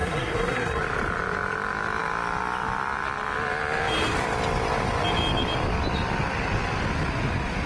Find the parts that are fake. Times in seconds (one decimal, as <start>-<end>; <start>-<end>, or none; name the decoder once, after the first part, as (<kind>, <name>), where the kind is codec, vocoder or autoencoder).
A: 0.0-0.8 (codec, SNAC)